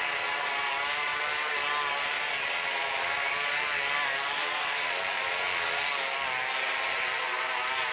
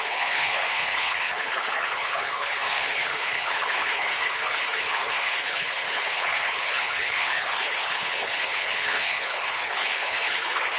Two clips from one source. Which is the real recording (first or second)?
first